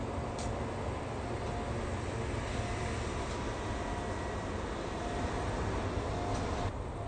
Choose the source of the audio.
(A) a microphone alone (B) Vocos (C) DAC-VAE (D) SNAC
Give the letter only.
A